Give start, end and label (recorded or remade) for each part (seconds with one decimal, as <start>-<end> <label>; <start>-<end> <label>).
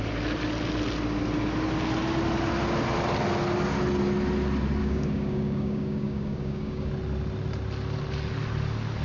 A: 0.0-4.8 recorded; 4.8-6.9 remade; 6.9-9.0 recorded